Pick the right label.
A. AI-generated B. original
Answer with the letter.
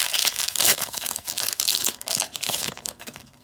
A